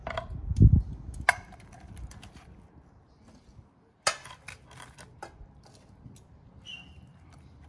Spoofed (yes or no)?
no